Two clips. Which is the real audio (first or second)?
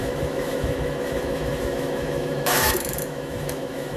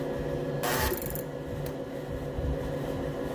second